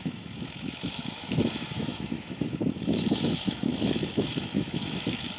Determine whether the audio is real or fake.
fake